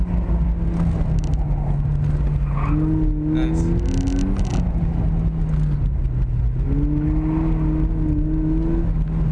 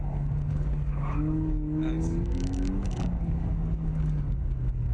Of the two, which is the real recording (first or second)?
first